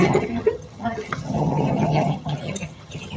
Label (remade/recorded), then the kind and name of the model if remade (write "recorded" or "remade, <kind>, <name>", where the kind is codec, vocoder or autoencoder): remade, vocoder, HiFi-GAN